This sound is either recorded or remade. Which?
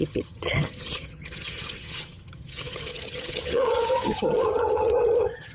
remade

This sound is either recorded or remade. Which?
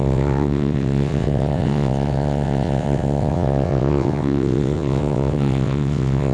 remade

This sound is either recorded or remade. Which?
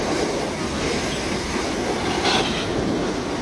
recorded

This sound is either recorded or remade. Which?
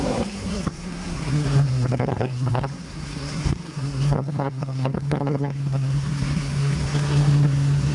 remade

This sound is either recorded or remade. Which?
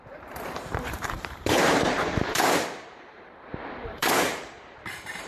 remade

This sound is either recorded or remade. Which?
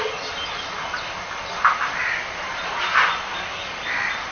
recorded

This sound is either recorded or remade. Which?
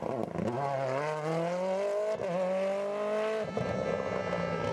recorded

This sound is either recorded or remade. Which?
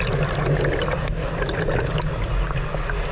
recorded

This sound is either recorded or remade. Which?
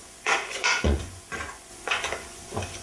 remade